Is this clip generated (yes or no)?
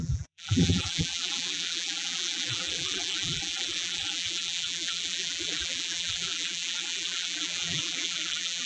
yes